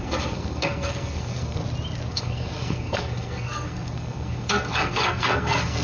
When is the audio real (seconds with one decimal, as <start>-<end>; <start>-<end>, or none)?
1.6-2.1